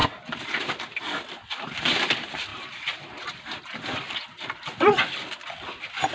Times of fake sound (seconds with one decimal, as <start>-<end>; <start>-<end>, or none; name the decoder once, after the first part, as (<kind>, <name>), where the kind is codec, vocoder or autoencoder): none